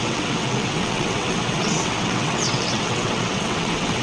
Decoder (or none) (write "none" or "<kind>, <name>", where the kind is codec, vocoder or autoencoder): vocoder, WaveNeXt